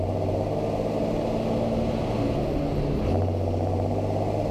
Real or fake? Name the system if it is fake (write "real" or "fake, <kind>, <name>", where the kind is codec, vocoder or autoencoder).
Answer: real